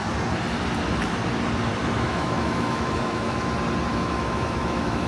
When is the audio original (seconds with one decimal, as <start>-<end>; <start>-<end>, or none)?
0.0-1.8; 3.5-3.9